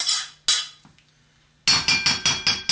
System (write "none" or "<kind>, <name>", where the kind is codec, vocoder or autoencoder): none